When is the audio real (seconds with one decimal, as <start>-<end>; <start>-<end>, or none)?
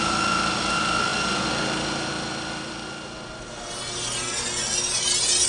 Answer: 0.0-5.5